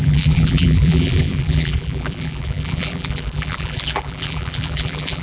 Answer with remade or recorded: remade